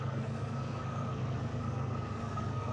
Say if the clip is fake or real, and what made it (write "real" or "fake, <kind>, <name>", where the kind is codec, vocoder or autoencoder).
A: fake, codec, SNAC